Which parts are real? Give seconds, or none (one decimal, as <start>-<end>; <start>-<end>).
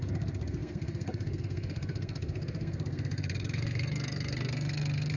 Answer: none